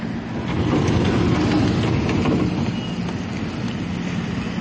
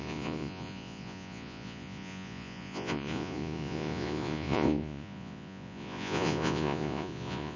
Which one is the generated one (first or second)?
second